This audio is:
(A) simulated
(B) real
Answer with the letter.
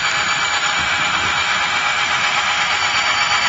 B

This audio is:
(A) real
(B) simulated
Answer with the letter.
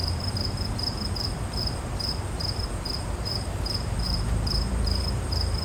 B